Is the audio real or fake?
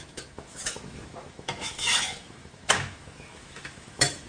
fake